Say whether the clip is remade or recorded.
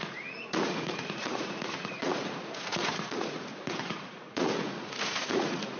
remade